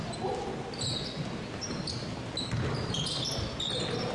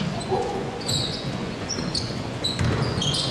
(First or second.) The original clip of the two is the first